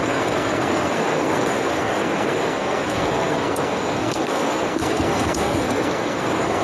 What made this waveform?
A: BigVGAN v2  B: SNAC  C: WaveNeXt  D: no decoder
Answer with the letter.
B